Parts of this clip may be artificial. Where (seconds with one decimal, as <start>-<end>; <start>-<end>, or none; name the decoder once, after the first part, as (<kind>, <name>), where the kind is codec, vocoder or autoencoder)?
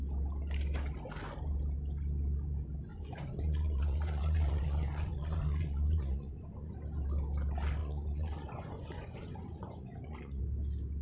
2.9-6.7 (vocoder, Vocos); 7.8-10.4